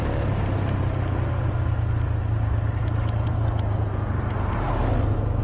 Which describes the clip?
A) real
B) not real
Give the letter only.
A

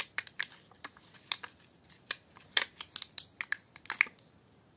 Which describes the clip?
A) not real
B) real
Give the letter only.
B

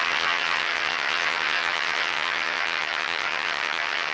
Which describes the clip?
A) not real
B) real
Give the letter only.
A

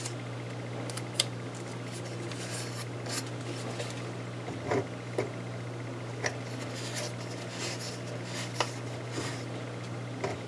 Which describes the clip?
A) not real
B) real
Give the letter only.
B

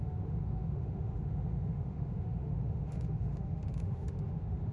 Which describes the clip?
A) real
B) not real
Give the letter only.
B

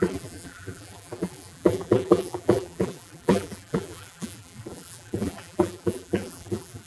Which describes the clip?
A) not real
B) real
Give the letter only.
A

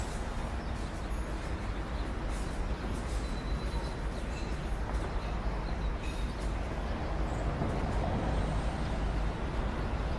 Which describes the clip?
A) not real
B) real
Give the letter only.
B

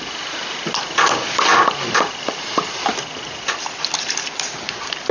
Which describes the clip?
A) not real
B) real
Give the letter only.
B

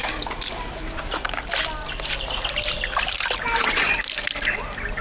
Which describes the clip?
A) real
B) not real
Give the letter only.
A